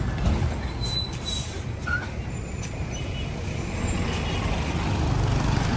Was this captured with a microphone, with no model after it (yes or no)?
yes